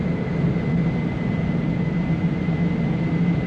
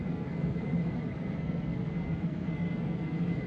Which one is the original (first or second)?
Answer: first